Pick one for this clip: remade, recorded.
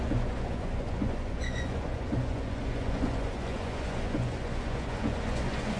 remade